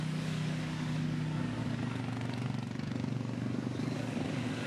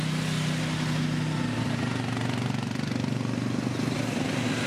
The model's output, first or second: first